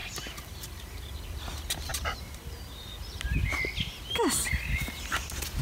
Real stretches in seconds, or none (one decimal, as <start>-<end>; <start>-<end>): 1.4-5.6

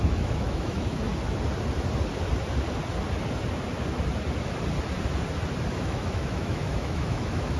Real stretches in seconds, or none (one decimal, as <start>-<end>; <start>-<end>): 1.1-5.7

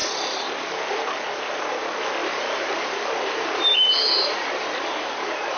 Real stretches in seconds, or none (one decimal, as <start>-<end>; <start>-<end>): 0.0-2.2

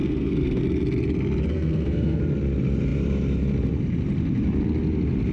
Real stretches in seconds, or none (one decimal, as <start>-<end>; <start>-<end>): 0.6-1.5; 2.2-5.3